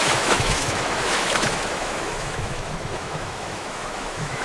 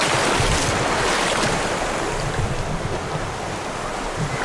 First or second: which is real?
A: second